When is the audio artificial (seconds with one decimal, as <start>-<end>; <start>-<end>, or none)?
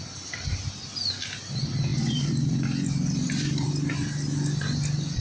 1.9-3.7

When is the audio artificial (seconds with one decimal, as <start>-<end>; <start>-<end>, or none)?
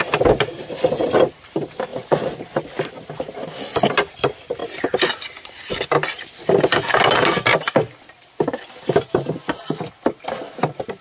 none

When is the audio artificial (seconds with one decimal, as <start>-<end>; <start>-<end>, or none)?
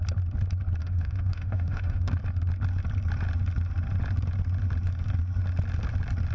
0.8-2.1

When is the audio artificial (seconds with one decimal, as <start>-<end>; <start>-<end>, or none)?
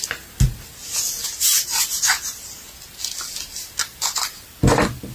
none